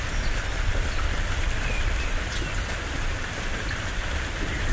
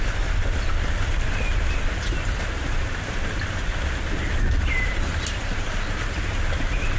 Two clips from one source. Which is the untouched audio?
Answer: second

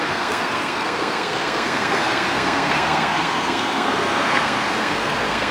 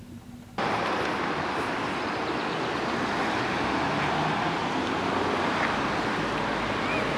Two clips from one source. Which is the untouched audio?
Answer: second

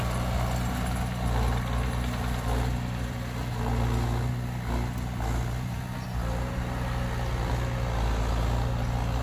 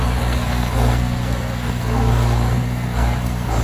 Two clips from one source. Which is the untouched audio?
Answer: first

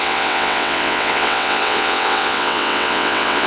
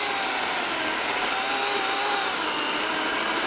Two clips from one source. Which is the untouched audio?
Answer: second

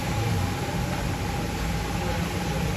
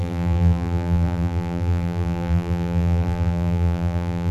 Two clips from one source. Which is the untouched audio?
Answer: first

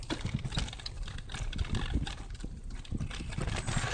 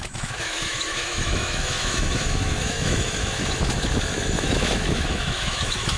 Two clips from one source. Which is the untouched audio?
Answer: first